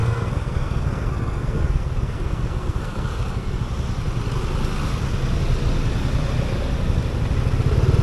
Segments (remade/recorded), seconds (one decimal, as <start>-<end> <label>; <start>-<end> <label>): 0.0-3.6 remade; 3.6-8.0 recorded